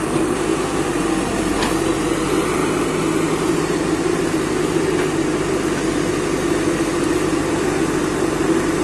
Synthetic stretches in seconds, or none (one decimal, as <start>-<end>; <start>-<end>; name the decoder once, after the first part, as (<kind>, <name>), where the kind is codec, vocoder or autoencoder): none